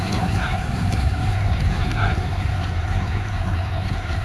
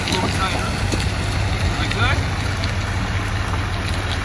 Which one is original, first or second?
second